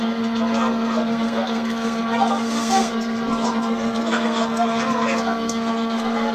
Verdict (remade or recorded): remade